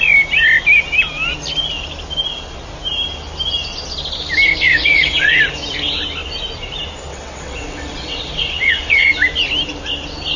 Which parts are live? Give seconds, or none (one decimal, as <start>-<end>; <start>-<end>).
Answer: 0.0-4.7; 5.4-7.1; 9.1-10.4